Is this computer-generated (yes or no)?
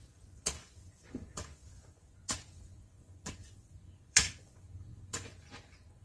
yes